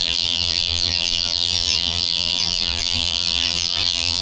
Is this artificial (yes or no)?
yes